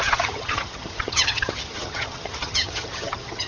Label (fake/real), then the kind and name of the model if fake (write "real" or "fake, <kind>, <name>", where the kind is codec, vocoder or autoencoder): fake, vocoder, HiFi-GAN